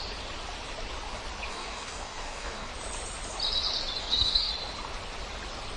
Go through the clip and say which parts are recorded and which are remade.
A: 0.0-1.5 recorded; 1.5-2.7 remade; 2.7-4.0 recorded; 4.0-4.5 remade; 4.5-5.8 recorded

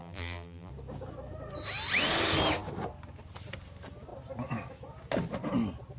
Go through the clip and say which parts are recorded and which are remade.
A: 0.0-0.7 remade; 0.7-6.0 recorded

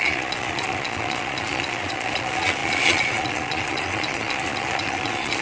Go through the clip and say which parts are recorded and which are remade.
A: 0.0-5.4 remade

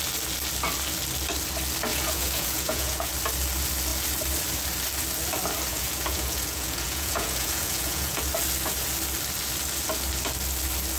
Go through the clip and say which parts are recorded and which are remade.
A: 0.0-1.9 recorded; 1.9-3.1 remade; 3.1-5.7 recorded; 5.7-8.2 remade; 8.2-11.0 recorded

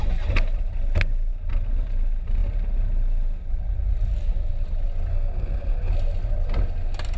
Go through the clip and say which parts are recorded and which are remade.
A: 0.0-5.1 recorded; 5.1-5.9 remade; 5.9-7.2 recorded